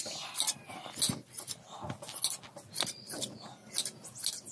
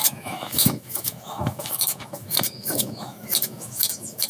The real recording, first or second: first